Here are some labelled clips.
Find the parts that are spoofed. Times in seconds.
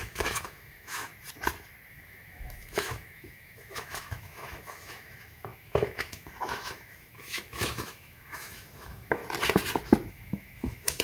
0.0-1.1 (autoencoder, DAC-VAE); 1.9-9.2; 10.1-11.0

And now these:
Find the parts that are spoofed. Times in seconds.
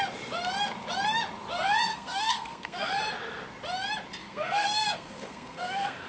1.9-2.9 (codec, SNAC); 4.2-6.1